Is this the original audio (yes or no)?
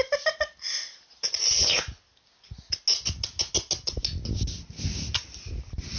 yes